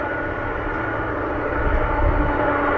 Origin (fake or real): real